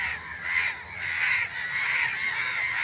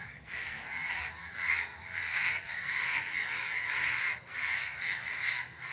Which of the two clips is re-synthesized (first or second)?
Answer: second